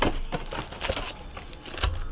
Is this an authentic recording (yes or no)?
yes